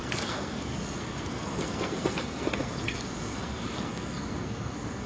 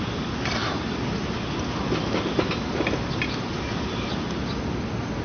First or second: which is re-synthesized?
first